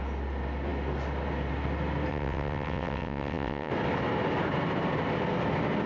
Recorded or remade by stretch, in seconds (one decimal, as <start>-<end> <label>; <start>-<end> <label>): 0.0-2.1 recorded; 2.1-3.7 remade; 3.7-5.9 recorded